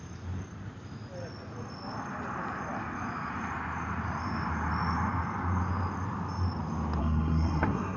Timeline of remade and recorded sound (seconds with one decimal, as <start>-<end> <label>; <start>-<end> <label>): 0.0-7.0 recorded; 7.0-8.0 remade